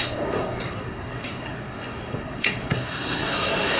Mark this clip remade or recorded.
remade